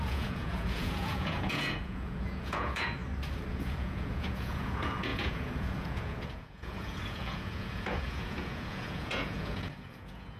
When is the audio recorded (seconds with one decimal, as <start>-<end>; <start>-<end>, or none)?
3.0-3.5